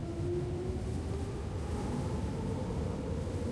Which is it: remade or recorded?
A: recorded